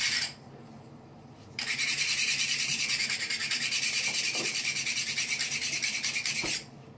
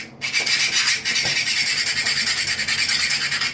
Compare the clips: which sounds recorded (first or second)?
second